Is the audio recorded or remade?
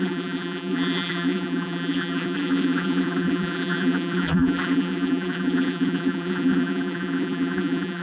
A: remade